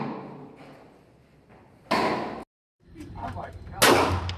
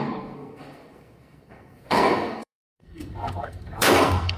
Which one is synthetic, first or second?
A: second